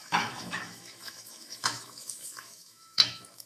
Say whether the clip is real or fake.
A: fake